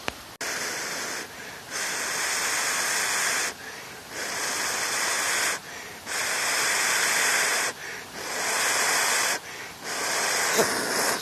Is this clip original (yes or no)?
yes